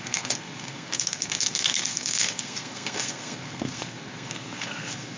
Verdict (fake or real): fake